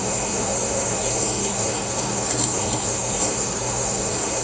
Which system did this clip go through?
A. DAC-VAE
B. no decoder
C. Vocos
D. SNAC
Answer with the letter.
D